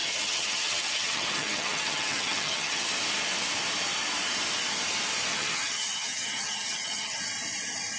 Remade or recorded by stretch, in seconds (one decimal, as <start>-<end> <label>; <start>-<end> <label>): 0.0-2.9 remade; 2.9-5.3 recorded; 5.3-7.2 remade; 7.2-8.0 recorded